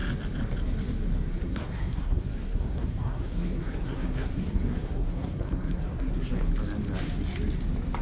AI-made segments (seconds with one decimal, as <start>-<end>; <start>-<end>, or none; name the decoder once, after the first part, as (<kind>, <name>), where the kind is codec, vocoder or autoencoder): 1.3-6.1 (codec, SNAC)